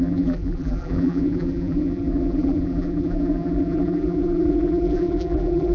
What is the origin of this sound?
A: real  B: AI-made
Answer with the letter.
B